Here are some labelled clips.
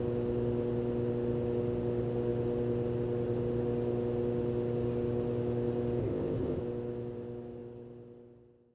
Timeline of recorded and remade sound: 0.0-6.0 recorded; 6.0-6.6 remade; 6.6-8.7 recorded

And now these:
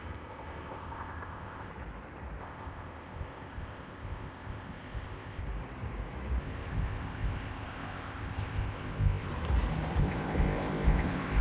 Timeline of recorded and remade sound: 0.0-1.7 remade; 1.7-2.4 recorded; 2.4-5.4 remade; 5.4-6.4 recorded; 6.4-9.3 remade; 9.3-10.0 recorded; 10.0-11.4 remade